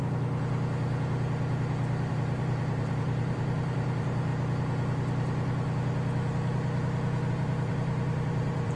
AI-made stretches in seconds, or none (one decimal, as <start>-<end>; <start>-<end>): 2.1-4.3; 7.3-8.8